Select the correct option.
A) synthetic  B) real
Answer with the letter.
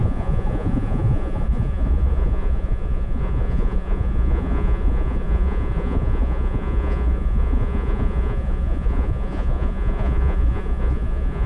A